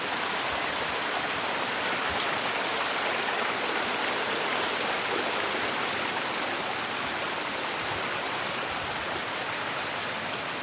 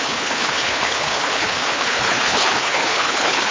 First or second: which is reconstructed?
second